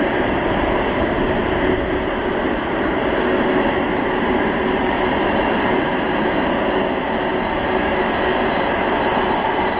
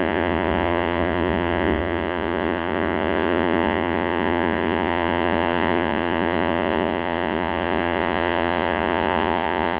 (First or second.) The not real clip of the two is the second